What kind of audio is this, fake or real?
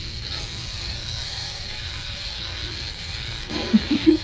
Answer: fake